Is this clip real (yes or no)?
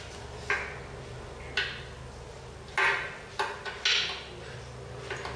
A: yes